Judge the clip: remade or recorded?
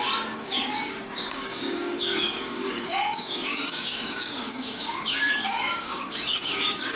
remade